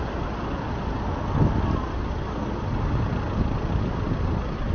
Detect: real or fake real